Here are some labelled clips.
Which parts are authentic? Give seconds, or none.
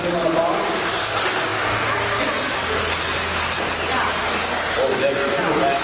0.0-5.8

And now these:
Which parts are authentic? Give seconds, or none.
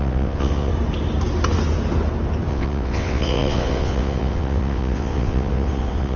0.7-2.5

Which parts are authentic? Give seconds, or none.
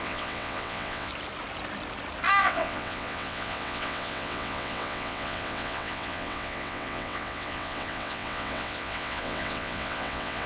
1.1-2.4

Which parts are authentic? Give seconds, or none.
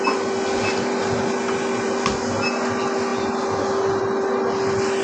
0.0-5.0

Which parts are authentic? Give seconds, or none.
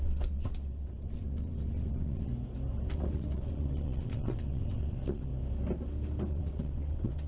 2.3-2.9; 5.3-6.3